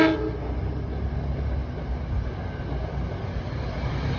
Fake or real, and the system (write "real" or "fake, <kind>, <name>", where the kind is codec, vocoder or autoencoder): real